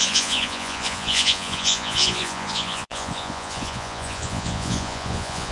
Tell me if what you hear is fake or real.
fake